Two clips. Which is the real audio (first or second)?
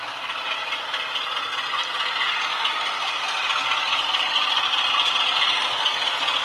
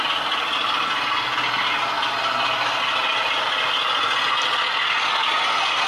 second